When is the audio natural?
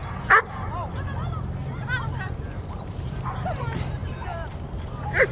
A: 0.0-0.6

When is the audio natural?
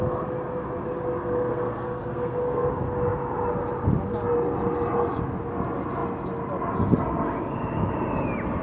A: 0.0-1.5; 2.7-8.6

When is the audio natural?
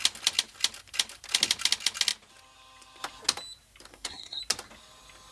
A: 0.0-3.9; 4.4-5.3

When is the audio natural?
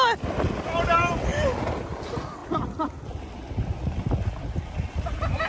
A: 0.0-1.3; 2.0-5.5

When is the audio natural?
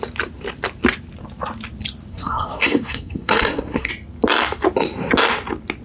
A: 0.0-2.1; 3.9-5.8